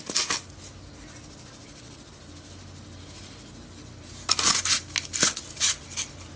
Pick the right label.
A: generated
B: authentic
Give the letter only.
B